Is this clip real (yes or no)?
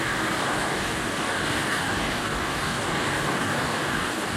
no